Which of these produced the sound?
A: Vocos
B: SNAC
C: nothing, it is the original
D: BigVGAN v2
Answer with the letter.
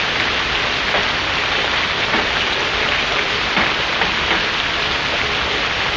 C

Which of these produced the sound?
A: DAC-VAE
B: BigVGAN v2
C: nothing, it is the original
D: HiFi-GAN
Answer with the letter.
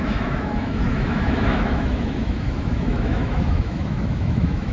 A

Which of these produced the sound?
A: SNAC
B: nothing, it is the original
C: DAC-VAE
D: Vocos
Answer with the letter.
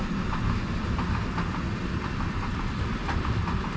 B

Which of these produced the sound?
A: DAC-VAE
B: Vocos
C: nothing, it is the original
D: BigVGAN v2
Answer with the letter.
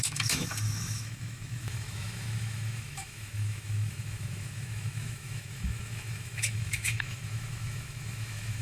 A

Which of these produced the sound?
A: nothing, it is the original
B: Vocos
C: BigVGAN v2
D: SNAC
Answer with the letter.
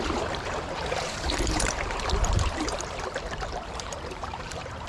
C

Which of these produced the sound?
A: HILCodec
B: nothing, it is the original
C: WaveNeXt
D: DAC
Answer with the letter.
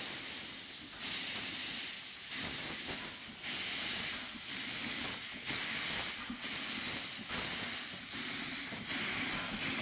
B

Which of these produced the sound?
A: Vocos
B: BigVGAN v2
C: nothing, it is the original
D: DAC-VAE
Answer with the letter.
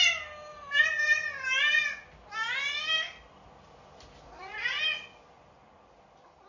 C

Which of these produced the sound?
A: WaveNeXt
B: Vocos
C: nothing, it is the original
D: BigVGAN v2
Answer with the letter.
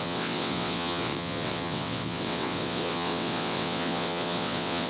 A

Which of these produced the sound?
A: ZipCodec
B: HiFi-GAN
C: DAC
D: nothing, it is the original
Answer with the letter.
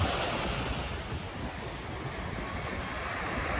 D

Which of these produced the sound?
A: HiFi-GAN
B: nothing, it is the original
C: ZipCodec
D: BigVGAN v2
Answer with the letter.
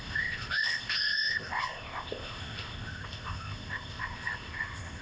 C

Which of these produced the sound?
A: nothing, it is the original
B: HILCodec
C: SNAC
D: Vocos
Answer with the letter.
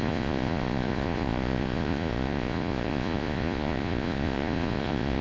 D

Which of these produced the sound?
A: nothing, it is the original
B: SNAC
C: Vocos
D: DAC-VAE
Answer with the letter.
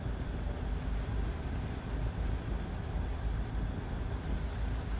A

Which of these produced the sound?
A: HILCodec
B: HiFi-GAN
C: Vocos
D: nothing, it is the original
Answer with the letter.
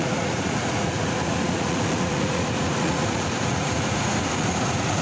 C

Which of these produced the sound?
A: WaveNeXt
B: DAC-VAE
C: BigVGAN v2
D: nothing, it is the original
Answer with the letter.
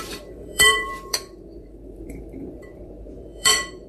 C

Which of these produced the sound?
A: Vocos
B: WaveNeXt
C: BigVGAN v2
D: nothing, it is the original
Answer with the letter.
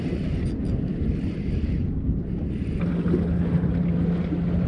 D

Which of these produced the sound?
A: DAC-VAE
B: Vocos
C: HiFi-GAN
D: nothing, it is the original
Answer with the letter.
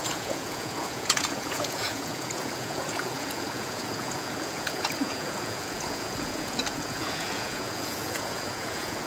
B